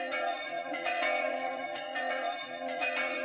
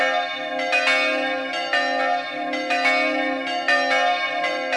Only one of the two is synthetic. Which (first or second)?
first